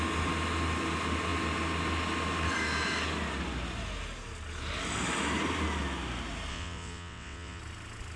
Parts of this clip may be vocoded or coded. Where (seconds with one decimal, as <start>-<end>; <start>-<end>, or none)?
6.5-7.6